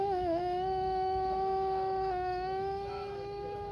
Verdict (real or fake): fake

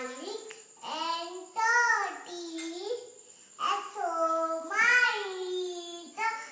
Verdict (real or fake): real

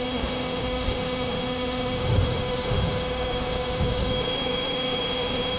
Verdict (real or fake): fake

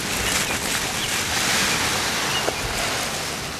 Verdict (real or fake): real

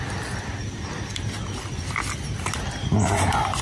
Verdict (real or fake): real